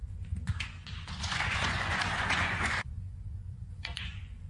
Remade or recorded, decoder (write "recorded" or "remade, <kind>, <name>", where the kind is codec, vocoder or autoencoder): remade, vocoder, Vocos